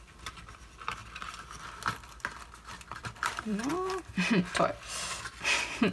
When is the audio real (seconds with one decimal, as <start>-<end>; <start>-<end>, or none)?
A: 0.0-1.0; 1.5-3.0; 3.7-5.9